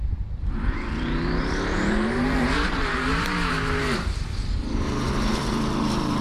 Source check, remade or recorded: remade